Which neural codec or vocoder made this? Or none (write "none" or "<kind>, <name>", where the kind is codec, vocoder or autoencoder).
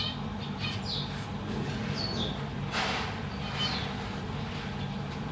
none